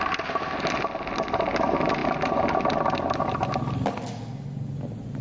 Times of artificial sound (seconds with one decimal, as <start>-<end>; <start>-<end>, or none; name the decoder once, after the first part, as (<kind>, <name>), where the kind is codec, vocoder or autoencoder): none